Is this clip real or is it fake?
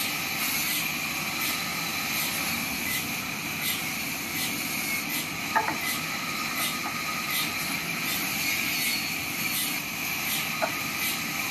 real